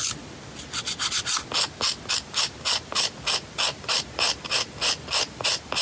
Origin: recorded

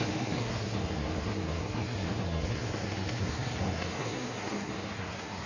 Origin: remade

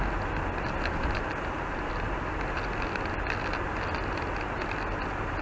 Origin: recorded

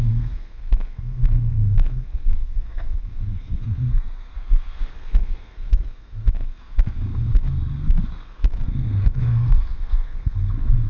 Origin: remade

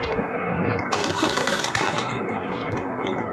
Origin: remade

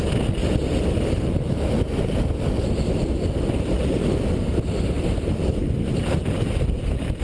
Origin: recorded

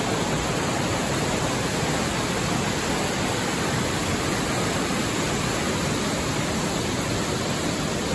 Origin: recorded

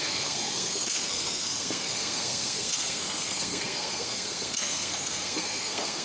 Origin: remade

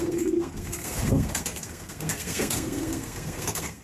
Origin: remade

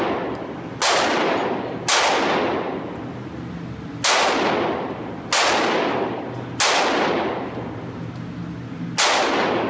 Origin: recorded